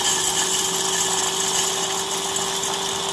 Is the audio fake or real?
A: real